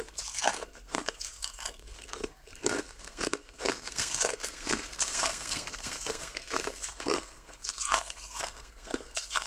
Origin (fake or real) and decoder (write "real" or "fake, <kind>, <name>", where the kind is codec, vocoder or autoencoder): fake, codec, SNAC